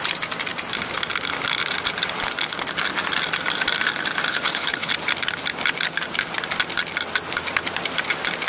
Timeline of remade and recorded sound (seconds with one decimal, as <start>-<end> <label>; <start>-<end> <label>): 0.0-4.3 recorded; 4.3-4.9 remade; 4.9-8.5 recorded